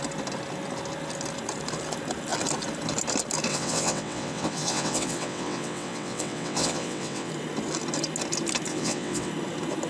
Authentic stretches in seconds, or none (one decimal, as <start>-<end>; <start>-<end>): 0.0-3.5; 7.3-8.7; 9.3-9.9